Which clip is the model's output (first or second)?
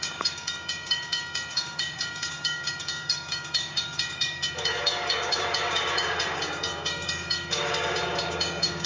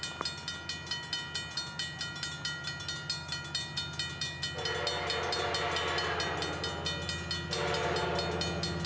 first